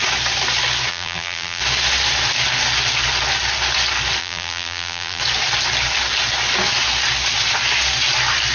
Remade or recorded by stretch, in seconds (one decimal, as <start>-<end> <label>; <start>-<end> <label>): 0.0-0.9 recorded; 0.9-1.6 remade; 1.6-4.2 recorded; 4.2-5.2 remade; 5.2-8.5 recorded